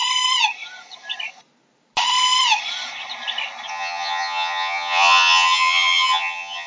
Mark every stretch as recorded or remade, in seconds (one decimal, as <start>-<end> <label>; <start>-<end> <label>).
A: 0.0-3.7 recorded; 3.7-6.7 remade